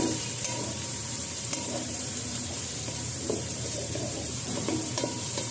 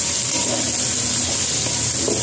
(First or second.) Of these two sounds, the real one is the second